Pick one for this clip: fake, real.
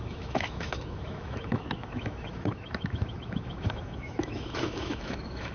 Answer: fake